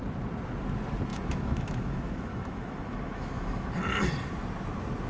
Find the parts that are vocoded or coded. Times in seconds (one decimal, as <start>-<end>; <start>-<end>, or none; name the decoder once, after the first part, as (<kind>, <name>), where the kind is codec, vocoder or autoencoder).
1.1-3.7 (autoencoder, DAC-VAE)